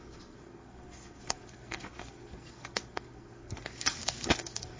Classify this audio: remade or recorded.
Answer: remade